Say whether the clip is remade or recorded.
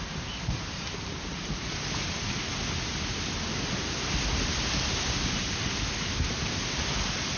recorded